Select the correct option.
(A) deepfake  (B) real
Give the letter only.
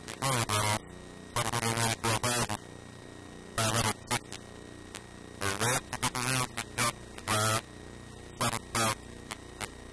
B